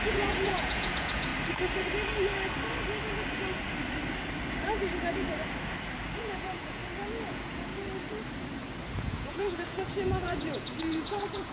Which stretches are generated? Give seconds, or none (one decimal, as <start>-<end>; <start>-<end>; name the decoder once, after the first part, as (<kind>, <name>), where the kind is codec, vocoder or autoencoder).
0.0-1.3 (vocoder, Vocos); 6.2-6.8; 7.3-7.7; 8.9-11.5